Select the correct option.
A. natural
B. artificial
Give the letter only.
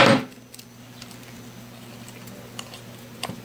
A